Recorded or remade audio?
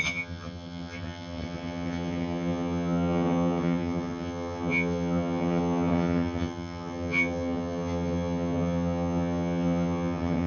remade